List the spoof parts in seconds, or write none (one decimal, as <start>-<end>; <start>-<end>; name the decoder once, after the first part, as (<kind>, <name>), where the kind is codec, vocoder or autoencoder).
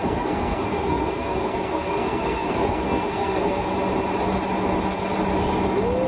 0.0-3.7 (codec, SNAC)